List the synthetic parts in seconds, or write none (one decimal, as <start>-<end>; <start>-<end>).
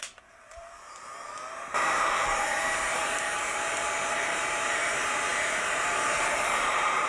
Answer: 0.0-7.1